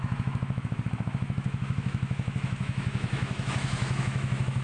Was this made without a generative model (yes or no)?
no